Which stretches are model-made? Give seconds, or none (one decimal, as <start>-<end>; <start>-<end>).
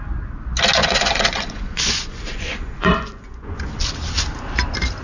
0.8-3.8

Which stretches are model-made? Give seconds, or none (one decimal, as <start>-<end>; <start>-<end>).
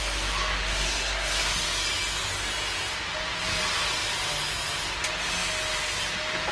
0.7-1.5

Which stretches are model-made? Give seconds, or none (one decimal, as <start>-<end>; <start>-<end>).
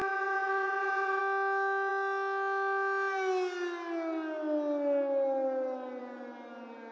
0.0-1.2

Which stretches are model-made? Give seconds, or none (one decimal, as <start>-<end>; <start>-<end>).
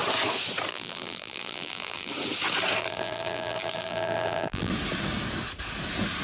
0.7-2.1; 2.8-4.7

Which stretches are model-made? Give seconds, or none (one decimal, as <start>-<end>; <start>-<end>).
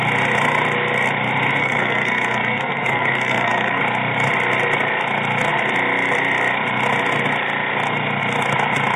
1.6-3.8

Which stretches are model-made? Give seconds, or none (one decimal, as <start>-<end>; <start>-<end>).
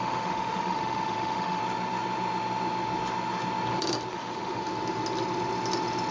0.0-1.6; 4.1-4.6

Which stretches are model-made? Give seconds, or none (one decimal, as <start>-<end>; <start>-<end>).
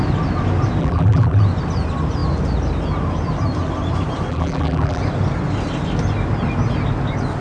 0.8-1.4; 4.3-5.0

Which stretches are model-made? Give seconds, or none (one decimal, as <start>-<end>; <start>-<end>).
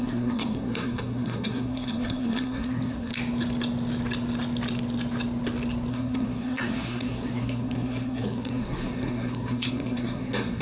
0.0-3.1; 5.9-10.6